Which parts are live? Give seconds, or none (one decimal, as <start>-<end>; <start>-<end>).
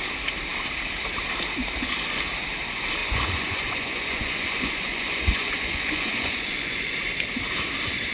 0.0-3.0; 7.0-8.1